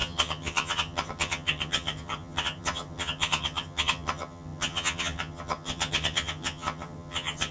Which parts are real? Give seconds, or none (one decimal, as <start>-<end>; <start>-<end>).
none